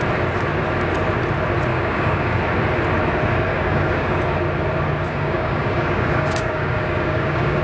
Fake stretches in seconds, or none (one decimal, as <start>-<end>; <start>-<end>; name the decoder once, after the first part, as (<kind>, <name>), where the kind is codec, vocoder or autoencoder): 1.7-2.4 (codec, DAC); 3.5-4.2; 5.1-7.6